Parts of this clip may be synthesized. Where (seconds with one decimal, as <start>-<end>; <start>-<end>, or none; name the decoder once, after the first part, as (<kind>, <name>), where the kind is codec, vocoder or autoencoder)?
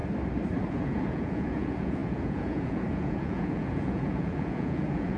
0.7-5.2 (vocoder, Vocos)